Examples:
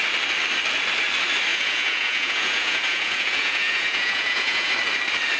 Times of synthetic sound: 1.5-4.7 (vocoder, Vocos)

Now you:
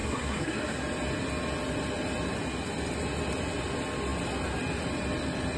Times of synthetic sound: 0.0-0.8 (codec, SNAC)

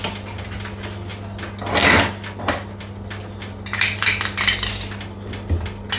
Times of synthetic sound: none

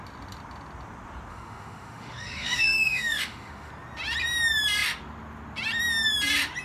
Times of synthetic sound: 1.3-3.7 (autoencoder, DAC-VAE)

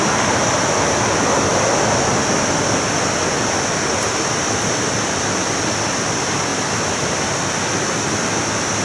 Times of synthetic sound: none

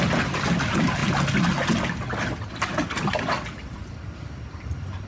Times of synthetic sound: none